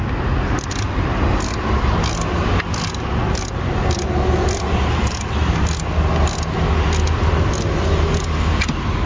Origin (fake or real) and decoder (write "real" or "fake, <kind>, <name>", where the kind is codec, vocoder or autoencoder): real